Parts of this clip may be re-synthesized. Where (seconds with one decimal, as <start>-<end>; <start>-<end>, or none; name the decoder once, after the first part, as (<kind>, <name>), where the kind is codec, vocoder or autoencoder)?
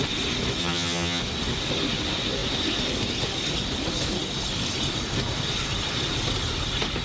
0.6-1.2 (vocoder, HiFi-GAN)